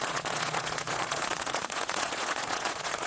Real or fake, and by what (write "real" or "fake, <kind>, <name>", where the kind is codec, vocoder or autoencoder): fake, vocoder, Vocos